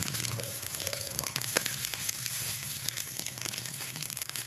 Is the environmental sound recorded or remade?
remade